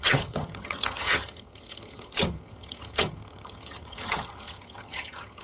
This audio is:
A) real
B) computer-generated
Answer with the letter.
B